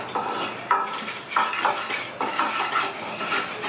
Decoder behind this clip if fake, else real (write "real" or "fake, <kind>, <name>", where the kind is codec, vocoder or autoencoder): real